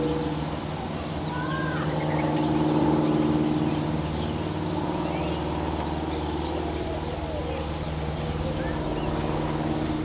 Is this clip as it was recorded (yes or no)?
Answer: yes